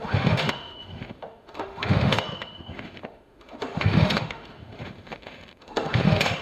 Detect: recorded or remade remade